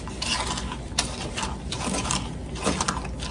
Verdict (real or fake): real